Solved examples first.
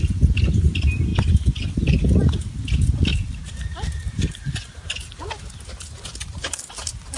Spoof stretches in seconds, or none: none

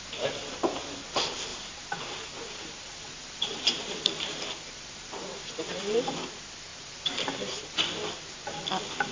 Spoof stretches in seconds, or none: 1.5-6.0 (vocoder, BigVGAN v2); 6.7-7.3

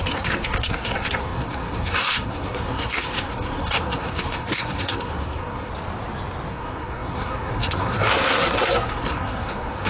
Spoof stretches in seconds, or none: 0.0-5.7 (codec, SNAC); 6.5-9.9

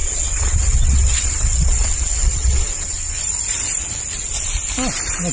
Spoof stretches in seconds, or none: 0.0-3.2 (vocoder, WaveNeXt)